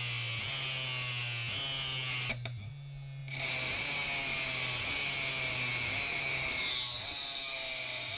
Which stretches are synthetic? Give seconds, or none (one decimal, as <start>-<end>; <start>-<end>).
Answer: none